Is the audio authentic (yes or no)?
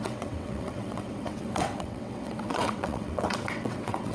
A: no